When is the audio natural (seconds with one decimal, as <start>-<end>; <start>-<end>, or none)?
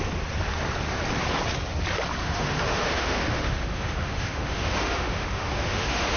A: 0.0-2.2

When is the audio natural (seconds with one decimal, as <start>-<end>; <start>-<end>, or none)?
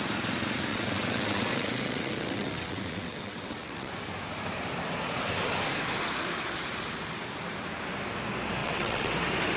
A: 0.0-0.7; 3.9-8.6; 9.1-9.6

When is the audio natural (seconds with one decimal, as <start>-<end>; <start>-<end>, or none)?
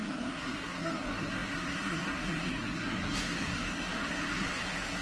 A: none